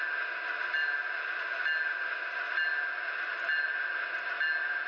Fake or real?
real